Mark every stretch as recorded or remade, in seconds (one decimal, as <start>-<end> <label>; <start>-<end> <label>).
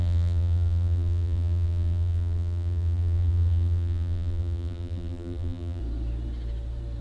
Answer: 0.0-5.8 remade; 5.8-7.0 recorded